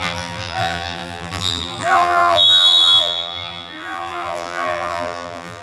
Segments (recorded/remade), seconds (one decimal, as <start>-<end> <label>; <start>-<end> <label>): 0.0-5.6 remade

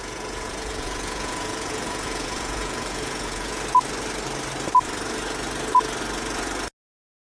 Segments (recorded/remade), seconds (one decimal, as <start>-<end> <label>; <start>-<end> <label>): 0.0-3.6 remade; 3.6-7.2 recorded

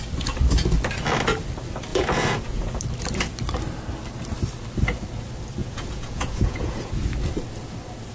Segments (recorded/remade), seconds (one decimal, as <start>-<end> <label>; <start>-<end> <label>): 0.0-1.9 recorded; 1.9-2.8 remade; 2.8-5.6 recorded; 5.6-6.9 remade; 6.9-8.1 recorded

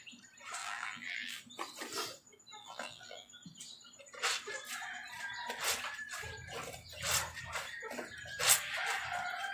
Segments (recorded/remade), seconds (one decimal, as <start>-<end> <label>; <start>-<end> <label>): 0.0-0.6 recorded; 0.6-1.4 remade; 1.4-2.6 recorded; 2.6-3.3 remade; 3.3-9.5 recorded

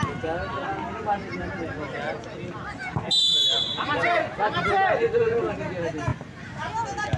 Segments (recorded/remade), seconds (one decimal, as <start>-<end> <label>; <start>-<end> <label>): 0.0-7.2 recorded

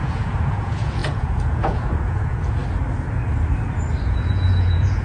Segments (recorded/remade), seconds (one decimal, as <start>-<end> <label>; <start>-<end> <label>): 0.0-2.6 remade; 2.6-4.0 recorded; 4.0-5.0 remade

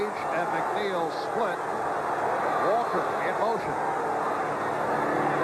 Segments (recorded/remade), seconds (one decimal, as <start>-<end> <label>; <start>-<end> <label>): 0.0-5.4 recorded